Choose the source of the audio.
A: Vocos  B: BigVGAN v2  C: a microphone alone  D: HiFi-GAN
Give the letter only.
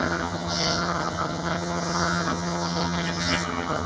D